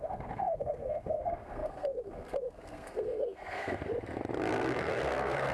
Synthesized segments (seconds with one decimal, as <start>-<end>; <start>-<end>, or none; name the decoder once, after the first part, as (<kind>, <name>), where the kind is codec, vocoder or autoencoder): 0.0-3.9 (codec, SNAC); 4.5-5.5